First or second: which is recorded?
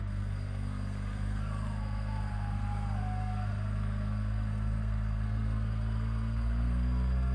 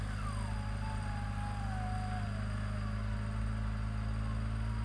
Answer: second